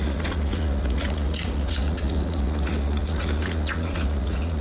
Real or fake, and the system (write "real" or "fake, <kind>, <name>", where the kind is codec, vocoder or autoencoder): fake, vocoder, Vocos